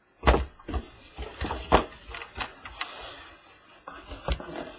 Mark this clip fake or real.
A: real